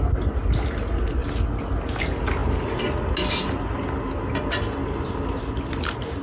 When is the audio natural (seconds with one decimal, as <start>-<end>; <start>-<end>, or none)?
0.0-6.2